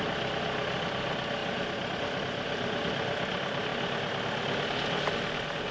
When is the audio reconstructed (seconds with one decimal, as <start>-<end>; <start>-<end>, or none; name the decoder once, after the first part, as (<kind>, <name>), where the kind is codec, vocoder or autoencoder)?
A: none

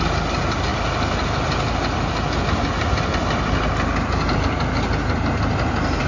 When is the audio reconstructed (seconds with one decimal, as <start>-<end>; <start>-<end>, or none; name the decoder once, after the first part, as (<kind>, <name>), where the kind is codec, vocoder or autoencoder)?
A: none

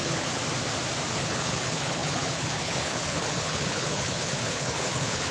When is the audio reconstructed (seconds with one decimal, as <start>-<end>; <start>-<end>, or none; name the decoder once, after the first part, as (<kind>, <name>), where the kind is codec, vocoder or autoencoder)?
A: 0.0-0.4 (codec, HILCodec); 1.1-5.3